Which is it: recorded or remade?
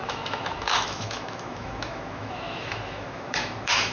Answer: remade